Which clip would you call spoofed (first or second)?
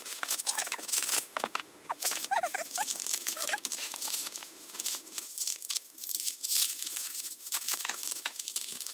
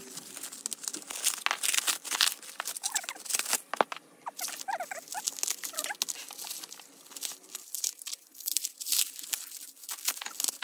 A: first